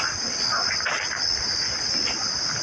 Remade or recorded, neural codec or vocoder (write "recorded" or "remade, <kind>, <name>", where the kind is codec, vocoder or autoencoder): recorded